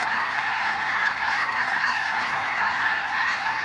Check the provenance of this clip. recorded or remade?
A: remade